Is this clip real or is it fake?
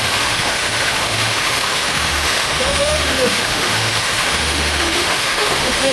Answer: fake